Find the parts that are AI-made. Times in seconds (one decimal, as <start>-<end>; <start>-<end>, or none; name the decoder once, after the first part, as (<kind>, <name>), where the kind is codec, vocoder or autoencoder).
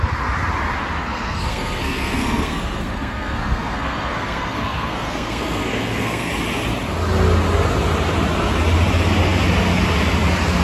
1.0-6.3 (codec, SNAC)